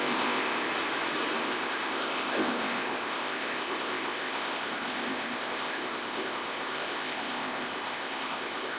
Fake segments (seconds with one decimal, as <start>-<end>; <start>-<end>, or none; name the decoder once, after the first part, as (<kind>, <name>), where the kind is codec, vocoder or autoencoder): 0.0-0.7 (codec, ZipCodec); 1.4-8.8